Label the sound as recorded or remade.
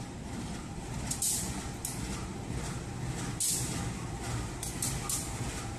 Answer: recorded